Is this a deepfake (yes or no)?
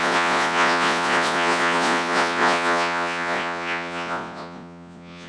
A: yes